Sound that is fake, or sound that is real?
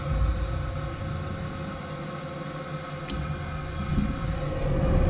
real